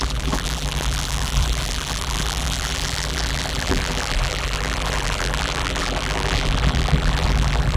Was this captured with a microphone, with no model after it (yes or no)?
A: no